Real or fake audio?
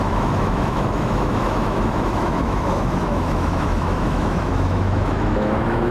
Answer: fake